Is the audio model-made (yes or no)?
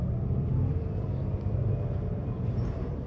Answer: yes